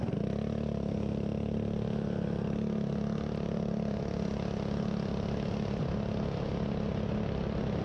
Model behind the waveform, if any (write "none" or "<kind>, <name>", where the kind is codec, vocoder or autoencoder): none